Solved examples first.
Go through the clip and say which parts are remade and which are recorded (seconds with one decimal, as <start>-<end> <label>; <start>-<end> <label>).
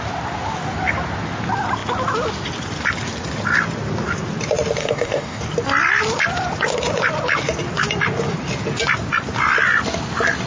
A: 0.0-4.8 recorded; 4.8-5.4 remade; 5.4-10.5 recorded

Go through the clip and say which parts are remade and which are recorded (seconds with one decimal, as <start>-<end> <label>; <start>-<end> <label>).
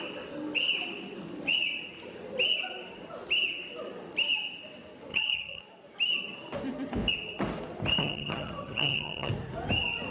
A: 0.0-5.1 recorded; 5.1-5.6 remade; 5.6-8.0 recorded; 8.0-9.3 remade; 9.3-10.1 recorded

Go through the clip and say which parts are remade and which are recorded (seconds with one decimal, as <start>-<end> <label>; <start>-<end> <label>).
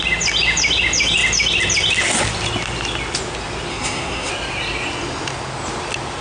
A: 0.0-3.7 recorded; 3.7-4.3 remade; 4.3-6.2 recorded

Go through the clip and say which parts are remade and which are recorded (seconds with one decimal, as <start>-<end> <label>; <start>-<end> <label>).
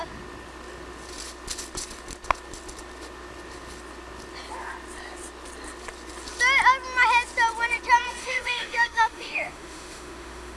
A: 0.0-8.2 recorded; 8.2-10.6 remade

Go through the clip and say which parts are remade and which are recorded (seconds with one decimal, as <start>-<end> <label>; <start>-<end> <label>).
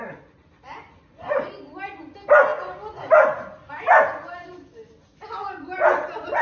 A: 0.0-6.4 recorded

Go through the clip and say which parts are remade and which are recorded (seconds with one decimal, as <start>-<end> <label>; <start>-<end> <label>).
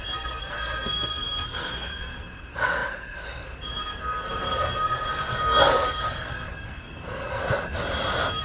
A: 0.0-7.4 remade; 7.4-8.4 recorded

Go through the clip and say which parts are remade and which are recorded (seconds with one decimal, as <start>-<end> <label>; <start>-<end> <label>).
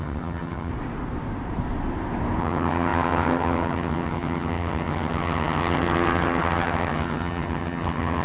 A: 0.0-0.7 remade; 0.7-2.4 recorded; 2.4-8.2 remade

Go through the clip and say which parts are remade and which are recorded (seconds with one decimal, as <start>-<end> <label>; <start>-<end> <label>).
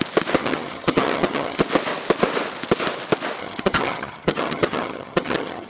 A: 0.0-0.4 recorded; 0.4-1.6 remade; 1.6-3.4 recorded; 3.4-5.7 remade